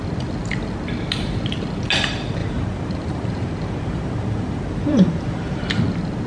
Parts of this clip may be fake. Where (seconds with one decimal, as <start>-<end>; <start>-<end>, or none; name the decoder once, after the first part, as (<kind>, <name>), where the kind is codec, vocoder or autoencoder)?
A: 2.4-5.8 (vocoder, BigVGAN v2)